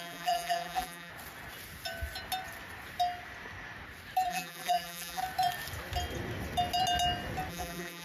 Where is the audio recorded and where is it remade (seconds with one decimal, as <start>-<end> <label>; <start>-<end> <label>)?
0.0-1.1 remade; 1.1-4.3 recorded; 4.3-5.2 remade; 5.2-7.5 recorded; 7.5-8.0 remade